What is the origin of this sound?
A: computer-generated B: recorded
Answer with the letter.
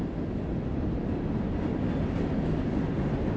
B